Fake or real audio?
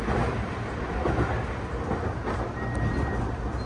real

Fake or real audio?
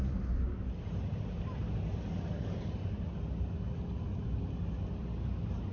real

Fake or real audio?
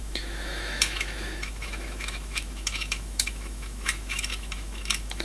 fake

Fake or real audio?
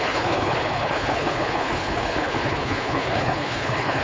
fake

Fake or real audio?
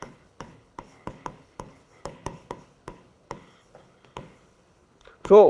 fake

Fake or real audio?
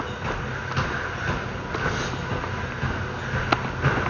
real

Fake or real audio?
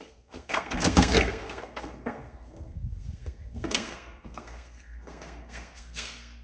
fake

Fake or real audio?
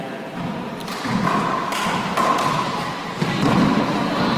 real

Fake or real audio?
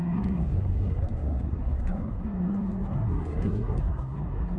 fake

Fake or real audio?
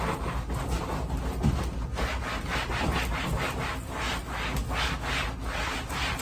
real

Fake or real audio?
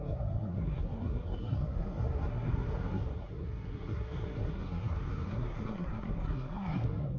fake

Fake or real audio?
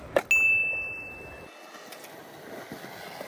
real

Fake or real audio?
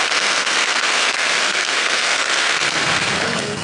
fake